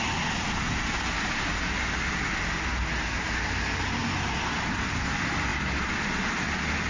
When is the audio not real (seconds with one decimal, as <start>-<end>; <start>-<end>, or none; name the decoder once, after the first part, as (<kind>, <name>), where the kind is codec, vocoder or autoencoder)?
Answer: none